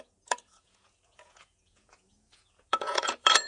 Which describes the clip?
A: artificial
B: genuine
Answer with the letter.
A